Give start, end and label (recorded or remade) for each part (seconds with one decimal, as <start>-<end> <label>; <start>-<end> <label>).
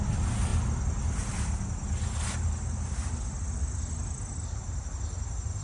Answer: 0.0-5.6 recorded